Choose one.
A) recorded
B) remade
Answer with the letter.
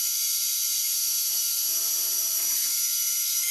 B